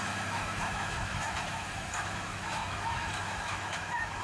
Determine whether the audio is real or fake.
fake